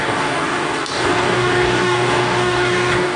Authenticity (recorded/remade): remade